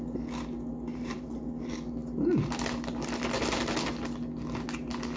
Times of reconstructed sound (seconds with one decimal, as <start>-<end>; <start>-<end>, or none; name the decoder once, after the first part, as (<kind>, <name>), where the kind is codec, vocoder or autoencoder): 0.9-1.4 (vocoder, BigVGAN v2)

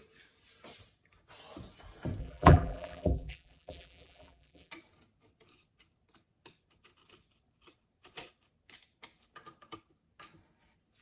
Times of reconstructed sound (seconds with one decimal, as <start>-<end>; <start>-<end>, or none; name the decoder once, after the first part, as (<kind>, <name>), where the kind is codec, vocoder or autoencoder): 2.2-4.7 (vocoder, BigVGAN v2)

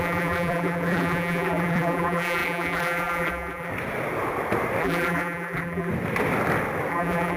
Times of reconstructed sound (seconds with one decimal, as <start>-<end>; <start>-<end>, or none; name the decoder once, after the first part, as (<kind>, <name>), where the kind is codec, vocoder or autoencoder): 0.0-3.7 (vocoder, BigVGAN v2); 4.8-5.9; 6.9-7.4